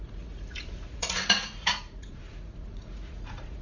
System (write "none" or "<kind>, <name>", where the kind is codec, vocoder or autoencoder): vocoder, Vocos